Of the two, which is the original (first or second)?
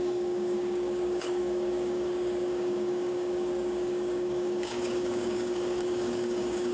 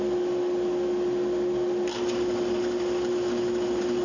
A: second